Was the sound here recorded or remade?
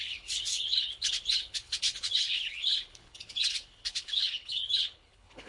remade